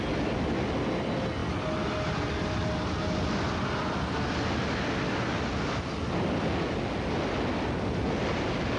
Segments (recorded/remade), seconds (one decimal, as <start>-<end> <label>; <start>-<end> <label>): 0.0-8.8 recorded